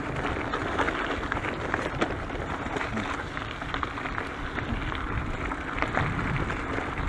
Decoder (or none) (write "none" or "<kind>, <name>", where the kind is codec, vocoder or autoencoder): none